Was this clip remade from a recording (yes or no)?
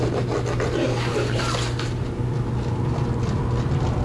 no